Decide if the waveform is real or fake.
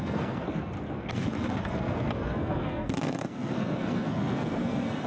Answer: fake